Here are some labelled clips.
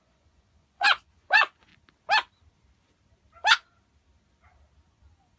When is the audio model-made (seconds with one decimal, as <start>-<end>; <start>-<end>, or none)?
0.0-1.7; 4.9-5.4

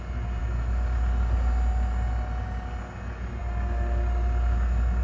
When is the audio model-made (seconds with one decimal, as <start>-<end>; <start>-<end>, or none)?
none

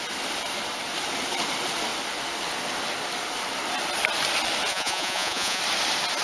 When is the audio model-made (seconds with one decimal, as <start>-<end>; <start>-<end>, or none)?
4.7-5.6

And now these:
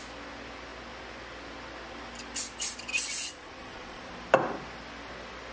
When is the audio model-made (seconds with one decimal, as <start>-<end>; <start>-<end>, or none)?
3.3-4.1

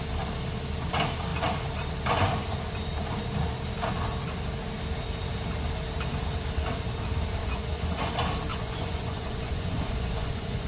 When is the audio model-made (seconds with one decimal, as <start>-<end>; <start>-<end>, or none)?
7.4-8.1; 8.5-10.7

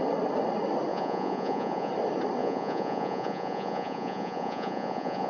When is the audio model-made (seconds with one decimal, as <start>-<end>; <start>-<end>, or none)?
0.9-1.9; 2.4-5.3

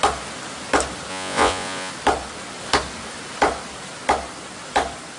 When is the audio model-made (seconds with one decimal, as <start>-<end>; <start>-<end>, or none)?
1.1-1.9

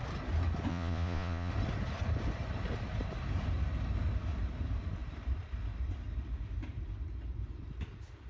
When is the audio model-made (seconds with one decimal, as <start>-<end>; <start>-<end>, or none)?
0.7-1.5